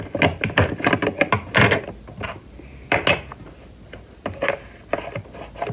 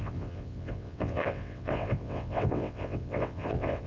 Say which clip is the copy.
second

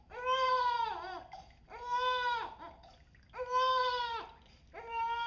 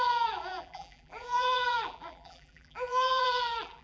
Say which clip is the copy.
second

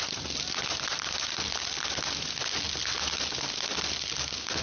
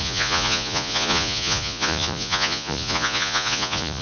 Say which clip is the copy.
second